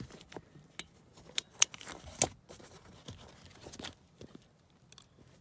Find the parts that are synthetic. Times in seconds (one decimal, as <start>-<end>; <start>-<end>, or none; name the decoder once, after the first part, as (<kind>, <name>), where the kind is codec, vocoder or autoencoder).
none